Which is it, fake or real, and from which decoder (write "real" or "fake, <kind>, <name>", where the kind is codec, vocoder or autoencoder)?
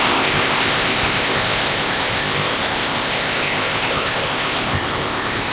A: fake, codec, ZipCodec